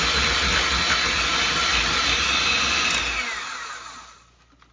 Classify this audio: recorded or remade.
recorded